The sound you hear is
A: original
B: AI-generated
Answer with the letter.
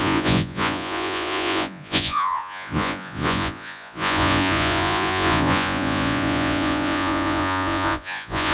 B